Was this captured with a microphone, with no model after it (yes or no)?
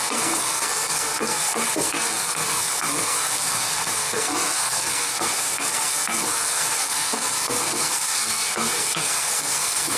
no